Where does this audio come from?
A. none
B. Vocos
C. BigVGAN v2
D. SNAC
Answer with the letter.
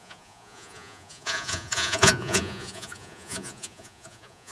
B